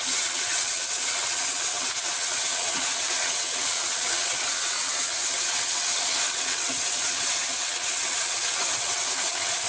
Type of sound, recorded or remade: remade